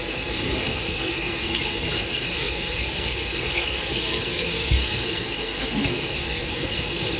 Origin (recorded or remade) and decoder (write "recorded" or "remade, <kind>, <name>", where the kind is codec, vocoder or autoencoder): remade, codec, SNAC